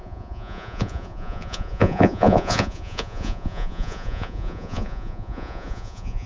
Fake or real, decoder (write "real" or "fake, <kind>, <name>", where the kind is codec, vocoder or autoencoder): fake, vocoder, Vocos